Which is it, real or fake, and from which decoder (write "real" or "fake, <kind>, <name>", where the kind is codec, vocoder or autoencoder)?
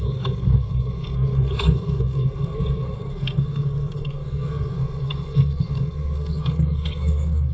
fake, codec, SNAC